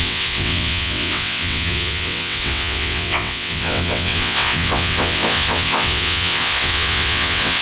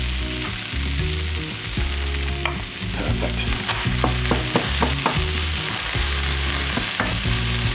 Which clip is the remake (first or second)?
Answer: first